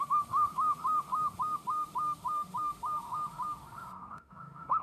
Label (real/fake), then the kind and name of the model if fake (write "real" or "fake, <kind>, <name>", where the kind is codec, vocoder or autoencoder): fake, autoencoder, DAC-VAE